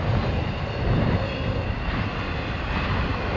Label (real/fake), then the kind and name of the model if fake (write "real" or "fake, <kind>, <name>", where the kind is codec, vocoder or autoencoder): real